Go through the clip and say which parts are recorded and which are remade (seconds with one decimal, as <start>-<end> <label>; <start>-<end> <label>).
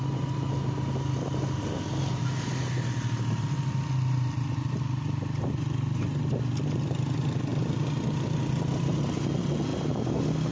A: 0.0-10.5 recorded